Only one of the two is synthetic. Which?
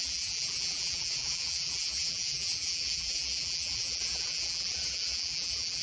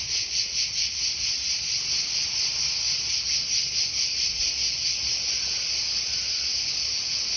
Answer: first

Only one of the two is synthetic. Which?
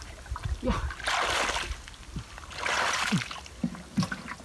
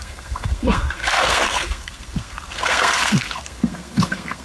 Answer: second